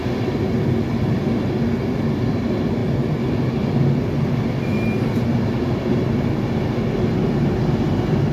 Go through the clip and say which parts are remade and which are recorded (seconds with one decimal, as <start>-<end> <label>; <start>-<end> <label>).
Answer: 0.0-8.3 recorded